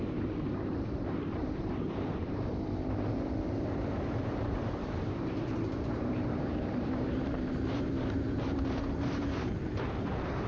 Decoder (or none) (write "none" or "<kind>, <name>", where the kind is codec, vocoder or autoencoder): vocoder, BigVGAN v2